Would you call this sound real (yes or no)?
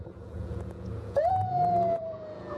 no